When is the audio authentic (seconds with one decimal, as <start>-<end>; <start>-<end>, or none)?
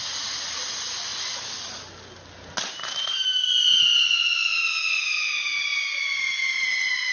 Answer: 0.0-7.1